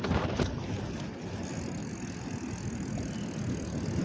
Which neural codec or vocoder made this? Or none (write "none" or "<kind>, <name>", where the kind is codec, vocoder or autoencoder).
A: none